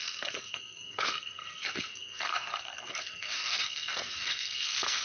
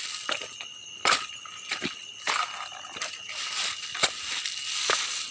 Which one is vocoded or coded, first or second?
first